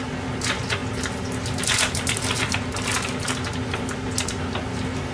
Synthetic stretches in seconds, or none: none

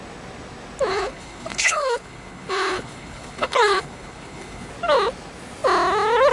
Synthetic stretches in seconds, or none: 0.9-4.7

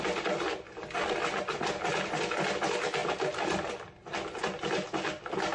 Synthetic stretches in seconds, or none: none

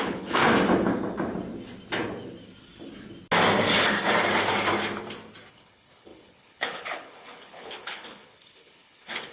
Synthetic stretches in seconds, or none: 0.0-0.4; 5.5-9.3

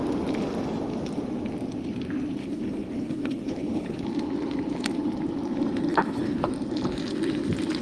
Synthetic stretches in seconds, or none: 2.4-4.0; 5.9-6.5